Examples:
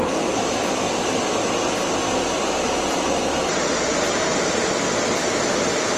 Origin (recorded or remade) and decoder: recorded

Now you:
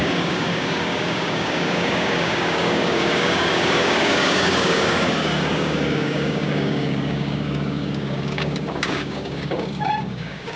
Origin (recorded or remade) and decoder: remade, codec, DAC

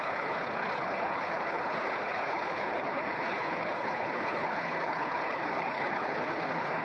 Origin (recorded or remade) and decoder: remade, codec, HILCodec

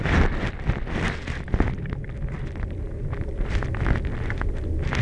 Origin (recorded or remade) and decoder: recorded